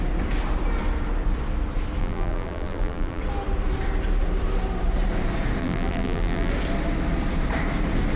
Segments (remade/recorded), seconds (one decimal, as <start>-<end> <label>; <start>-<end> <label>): 0.0-2.0 recorded; 2.0-3.2 remade; 3.2-5.6 recorded; 5.6-6.5 remade; 6.5-8.2 recorded

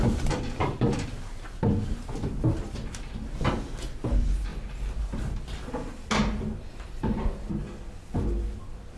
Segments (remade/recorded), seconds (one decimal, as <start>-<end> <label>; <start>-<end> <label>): 0.0-9.0 recorded

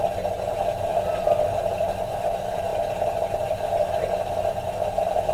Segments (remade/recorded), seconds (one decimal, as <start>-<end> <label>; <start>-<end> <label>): 0.0-5.3 recorded

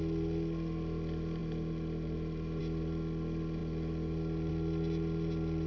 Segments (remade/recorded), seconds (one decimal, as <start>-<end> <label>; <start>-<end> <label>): 0.0-5.7 recorded

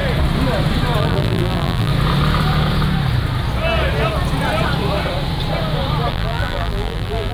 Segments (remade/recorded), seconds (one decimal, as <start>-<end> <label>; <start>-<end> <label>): 0.0-1.0 recorded; 1.0-1.9 remade; 1.9-6.1 recorded; 6.1-7.3 remade

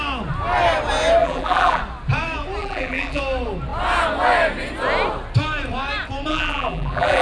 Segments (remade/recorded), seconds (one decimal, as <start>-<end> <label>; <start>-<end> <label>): 0.0-1.2 recorded; 1.2-1.8 remade; 1.8-2.6 recorded; 2.6-3.2 remade; 3.2-6.3 recorded; 6.3-7.2 remade